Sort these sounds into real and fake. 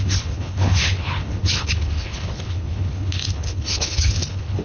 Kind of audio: fake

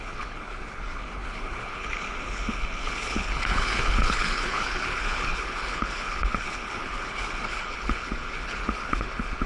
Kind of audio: fake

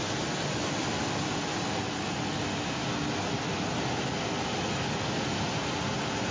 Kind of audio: real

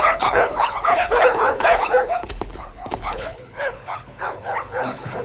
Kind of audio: fake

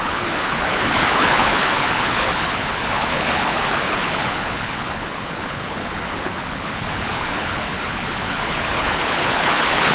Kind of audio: fake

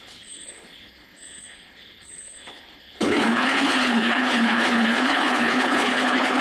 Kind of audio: fake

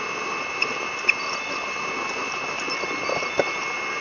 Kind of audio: real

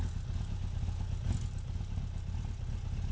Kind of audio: real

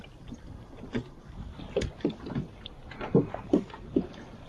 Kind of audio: real